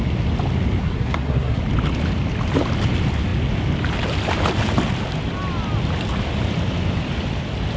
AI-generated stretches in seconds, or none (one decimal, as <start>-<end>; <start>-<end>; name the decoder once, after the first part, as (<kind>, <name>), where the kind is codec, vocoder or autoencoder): 0.8-1.6 (codec, SNAC)

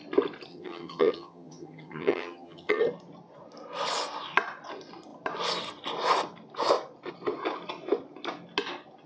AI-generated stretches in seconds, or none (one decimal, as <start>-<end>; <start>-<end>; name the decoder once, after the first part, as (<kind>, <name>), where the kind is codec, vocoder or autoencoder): 0.5-2.8 (vocoder, HiFi-GAN)

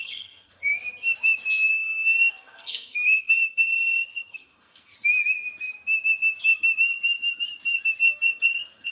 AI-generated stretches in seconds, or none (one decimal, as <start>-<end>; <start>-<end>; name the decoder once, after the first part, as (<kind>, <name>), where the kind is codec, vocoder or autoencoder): 0.0-0.7 (codec, SNAC); 1.7-4.9; 8.0-8.9

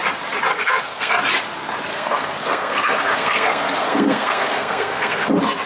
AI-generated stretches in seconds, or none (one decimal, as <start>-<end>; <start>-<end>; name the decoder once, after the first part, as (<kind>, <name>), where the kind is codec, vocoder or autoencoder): 0.5-1.1 (codec, SNAC); 1.9-5.3

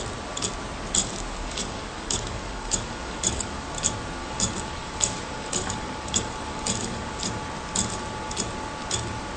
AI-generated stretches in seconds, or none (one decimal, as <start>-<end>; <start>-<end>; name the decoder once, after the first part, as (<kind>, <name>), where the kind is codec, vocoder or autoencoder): 1.0-3.7 (codec, DAC); 4.2-7.2

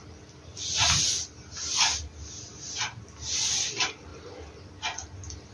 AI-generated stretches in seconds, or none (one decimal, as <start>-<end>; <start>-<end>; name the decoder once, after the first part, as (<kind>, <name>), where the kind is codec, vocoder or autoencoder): none